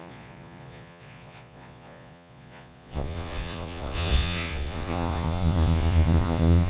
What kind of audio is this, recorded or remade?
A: remade